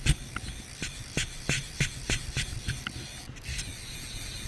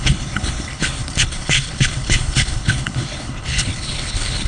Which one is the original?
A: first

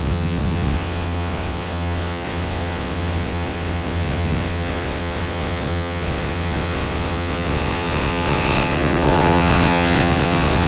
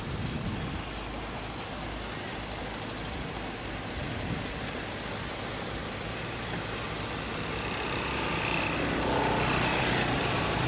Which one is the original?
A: second